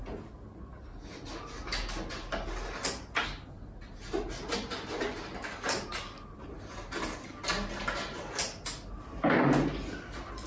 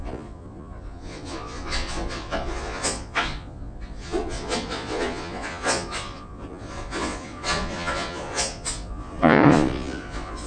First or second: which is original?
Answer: first